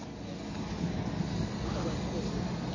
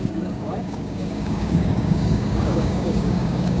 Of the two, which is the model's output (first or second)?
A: second